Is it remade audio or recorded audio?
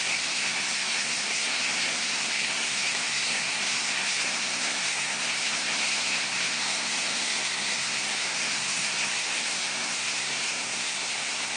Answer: remade